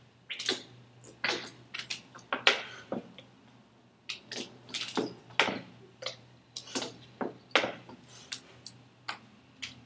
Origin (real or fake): real